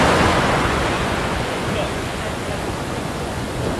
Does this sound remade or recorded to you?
remade